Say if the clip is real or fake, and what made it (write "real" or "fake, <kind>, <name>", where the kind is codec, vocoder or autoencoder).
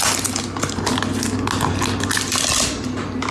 real